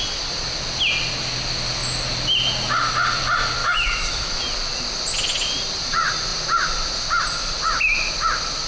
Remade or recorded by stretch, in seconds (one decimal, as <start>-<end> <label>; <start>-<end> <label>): 0.0-3.6 recorded; 3.6-4.4 remade; 4.4-8.7 recorded